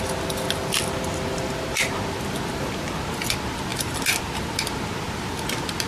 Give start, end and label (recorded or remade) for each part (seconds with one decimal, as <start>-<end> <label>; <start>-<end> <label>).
0.0-5.9 recorded